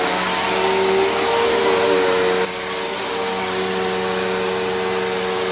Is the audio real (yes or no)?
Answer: yes